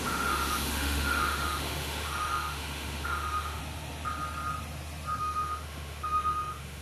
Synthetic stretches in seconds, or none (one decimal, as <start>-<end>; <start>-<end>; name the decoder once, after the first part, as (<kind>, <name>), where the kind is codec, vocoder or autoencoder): 0.0-3.6 (autoencoder, DAC-VAE); 5.2-6.8